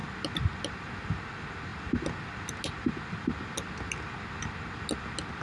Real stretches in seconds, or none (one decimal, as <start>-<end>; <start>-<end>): 0.0-5.4